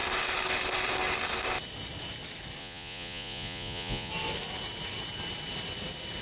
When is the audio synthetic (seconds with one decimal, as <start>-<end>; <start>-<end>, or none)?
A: 2.6-4.1